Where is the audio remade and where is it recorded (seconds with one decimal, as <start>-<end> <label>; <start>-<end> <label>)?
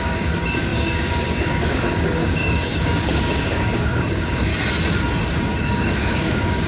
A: 0.0-4.5 remade; 4.5-5.6 recorded; 5.6-6.7 remade